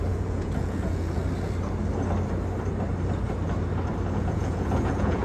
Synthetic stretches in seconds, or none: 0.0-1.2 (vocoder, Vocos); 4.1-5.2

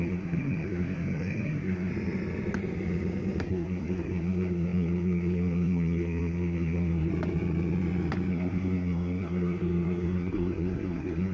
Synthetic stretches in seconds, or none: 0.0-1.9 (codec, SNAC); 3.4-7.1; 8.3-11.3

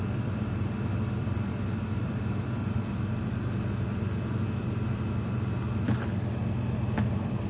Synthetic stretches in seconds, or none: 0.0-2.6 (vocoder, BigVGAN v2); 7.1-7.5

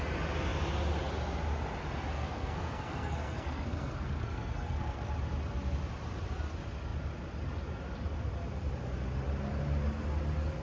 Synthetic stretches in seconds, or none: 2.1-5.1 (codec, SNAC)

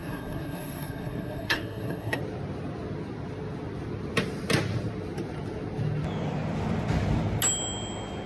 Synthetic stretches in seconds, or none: 0.0-2.2 (codec, SNAC)

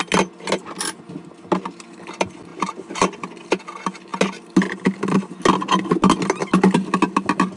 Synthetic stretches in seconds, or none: none

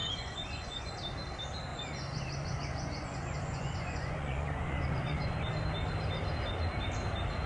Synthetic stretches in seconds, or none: 0.0-0.9 (vocoder, Vocos); 1.7-5.5

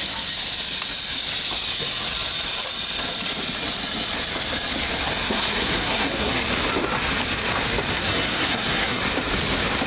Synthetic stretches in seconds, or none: 5.2-6.4 (codec, SNAC); 7.9-9.0